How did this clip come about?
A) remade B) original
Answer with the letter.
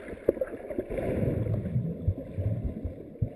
B